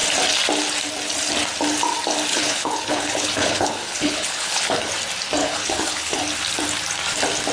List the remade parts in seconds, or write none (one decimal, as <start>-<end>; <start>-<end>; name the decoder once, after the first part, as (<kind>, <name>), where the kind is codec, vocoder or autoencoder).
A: 2.3-4.9 (codec, HILCodec); 5.4-6.2